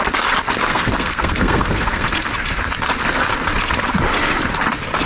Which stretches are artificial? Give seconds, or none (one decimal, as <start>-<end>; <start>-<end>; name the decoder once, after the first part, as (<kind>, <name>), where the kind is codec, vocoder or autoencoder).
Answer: 0.7-2.1 (codec, SNAC)